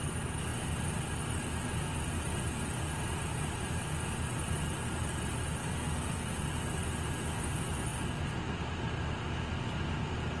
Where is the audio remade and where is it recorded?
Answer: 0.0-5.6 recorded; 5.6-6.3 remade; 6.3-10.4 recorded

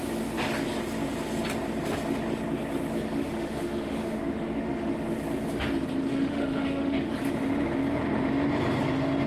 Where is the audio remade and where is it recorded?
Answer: 0.0-3.2 recorded; 3.2-4.9 remade; 4.9-6.1 recorded; 6.1-7.1 remade; 7.1-9.3 recorded

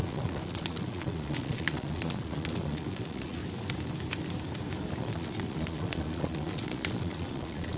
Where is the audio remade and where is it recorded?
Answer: 0.0-3.4 remade; 3.4-5.0 recorded; 5.0-7.8 remade

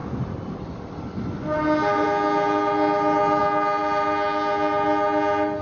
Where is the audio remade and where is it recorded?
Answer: 0.0-5.6 recorded

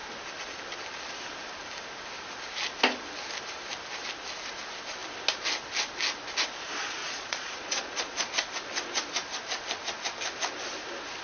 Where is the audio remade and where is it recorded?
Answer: 0.0-7.0 recorded; 7.0-8.3 remade; 8.3-11.2 recorded